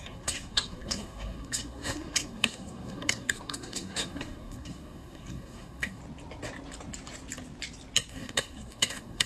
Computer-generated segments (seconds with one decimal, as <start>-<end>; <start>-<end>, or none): 0.0-6.0; 8.1-9.3